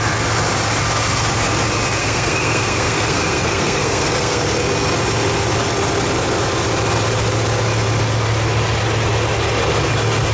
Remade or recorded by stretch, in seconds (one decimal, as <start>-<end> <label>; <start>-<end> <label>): 0.0-2.0 recorded; 2.0-4.4 remade; 4.4-10.3 recorded